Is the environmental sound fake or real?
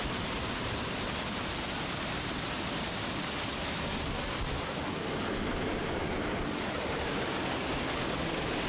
real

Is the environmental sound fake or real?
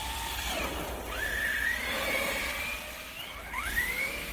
real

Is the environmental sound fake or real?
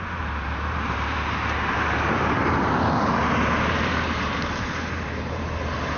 fake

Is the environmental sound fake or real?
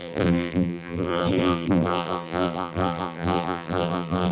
fake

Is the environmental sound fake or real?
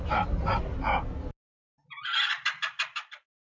real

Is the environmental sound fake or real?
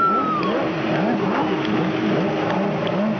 real